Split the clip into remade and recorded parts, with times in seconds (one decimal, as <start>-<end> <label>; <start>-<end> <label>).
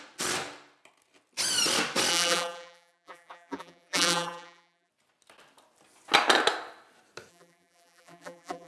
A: 0.0-2.1 recorded; 2.1-4.9 remade; 4.9-7.3 recorded; 7.3-8.7 remade